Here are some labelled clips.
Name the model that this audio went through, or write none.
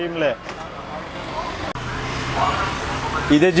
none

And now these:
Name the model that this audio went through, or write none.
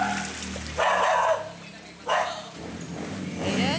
none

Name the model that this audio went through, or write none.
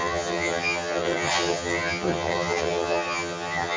vocoder, HiFi-GAN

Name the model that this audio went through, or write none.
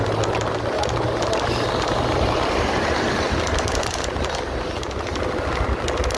none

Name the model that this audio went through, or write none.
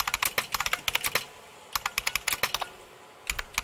none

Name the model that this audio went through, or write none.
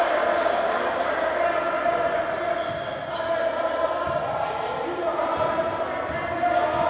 none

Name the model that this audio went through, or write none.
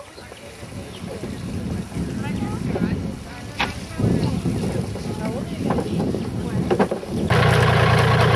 none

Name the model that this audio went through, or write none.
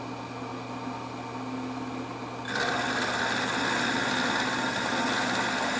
none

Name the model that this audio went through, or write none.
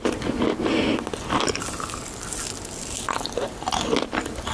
none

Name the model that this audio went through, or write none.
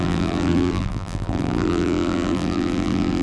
vocoder, BigVGAN v2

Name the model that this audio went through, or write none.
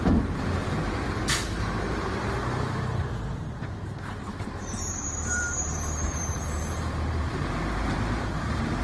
vocoder, BigVGAN v2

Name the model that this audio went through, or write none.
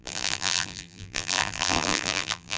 vocoder, BigVGAN v2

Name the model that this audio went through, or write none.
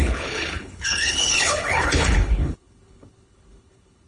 codec, HILCodec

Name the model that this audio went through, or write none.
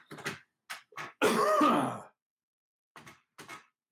none